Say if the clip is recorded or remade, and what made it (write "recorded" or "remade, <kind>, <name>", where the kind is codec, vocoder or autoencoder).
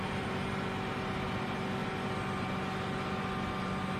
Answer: recorded